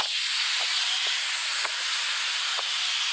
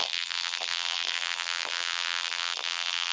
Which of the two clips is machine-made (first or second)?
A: second